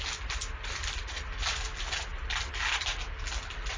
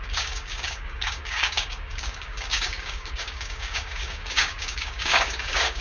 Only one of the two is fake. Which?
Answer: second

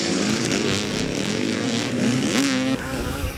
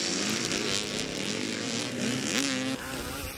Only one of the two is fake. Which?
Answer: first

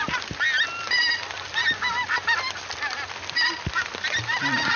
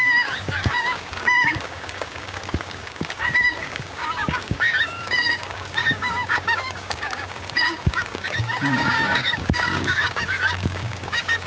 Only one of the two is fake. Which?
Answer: second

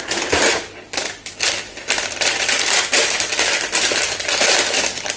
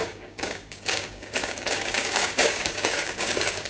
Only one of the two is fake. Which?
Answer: second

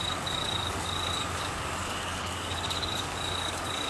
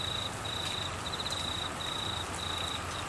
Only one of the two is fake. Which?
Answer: first